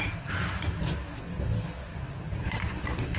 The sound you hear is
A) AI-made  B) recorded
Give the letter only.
B